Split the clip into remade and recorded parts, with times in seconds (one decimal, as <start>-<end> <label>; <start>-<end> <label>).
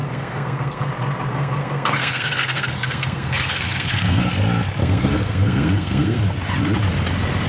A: 0.0-0.9 remade; 0.9-1.3 recorded; 1.3-4.2 remade; 4.2-4.8 recorded; 4.8-6.2 remade; 6.2-7.5 recorded